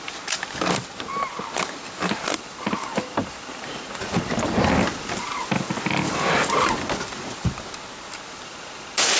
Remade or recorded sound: recorded